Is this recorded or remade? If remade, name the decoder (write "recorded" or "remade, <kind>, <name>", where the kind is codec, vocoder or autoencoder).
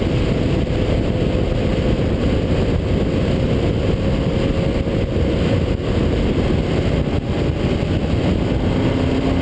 recorded